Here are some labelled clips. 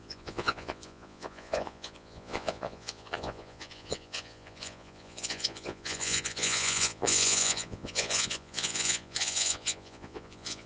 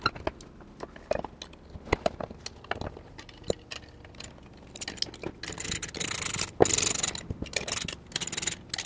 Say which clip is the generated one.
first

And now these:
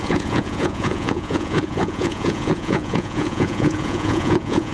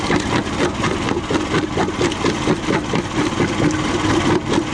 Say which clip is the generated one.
first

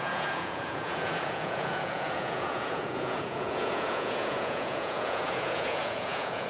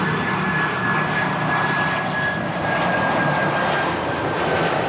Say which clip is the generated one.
first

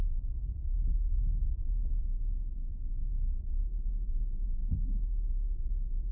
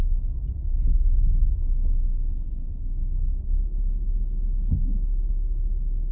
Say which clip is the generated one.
first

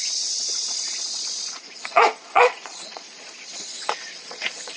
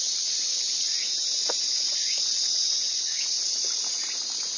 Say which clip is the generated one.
first